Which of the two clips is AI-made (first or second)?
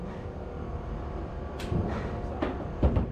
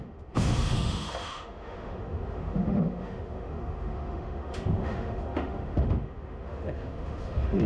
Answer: second